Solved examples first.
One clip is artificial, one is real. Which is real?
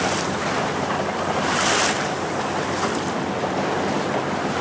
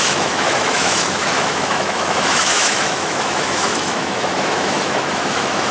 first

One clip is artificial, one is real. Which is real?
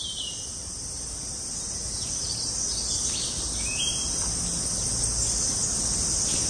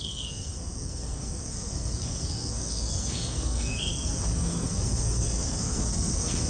first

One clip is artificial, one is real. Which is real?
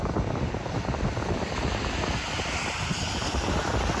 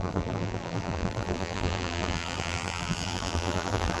first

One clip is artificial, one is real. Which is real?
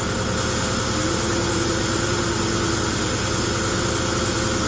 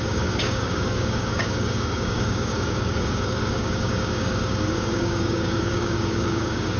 first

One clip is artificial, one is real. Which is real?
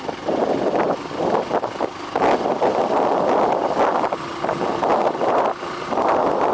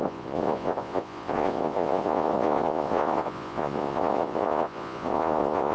first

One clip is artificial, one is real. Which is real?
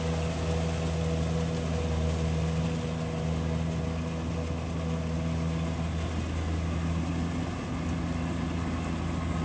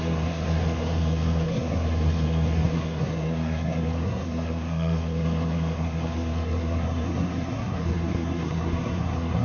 first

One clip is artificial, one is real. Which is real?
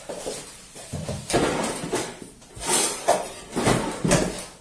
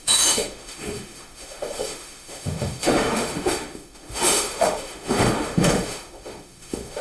first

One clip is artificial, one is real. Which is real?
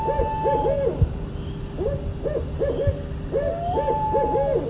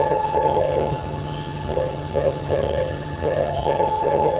first